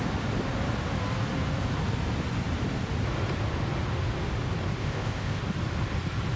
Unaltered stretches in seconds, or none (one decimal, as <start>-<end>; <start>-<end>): 0.0-4.8; 5.4-6.4